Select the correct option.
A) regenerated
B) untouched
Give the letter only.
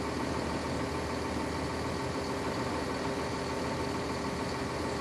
B